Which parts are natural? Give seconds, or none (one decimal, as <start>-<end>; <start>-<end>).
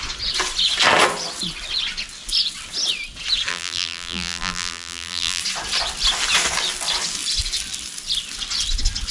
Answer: 0.0-3.5; 5.4-9.1